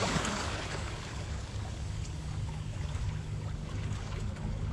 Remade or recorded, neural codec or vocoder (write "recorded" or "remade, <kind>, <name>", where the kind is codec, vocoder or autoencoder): remade, codec, DAC